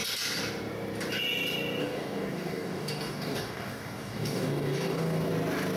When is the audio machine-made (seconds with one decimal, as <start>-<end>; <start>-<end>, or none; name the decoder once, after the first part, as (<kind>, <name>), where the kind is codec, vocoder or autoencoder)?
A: 1.8-5.3 (codec, DAC)